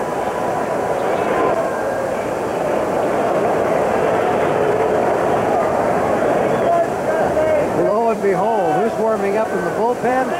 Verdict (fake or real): fake